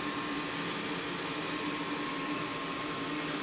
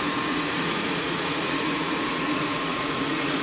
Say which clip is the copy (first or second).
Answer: second